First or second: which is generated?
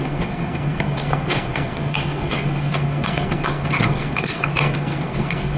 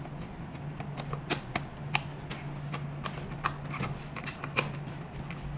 first